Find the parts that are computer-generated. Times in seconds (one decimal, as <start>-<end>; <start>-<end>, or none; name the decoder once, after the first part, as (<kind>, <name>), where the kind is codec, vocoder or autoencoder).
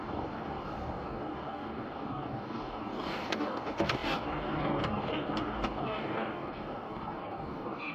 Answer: 0.0-7.9 (codec, DAC)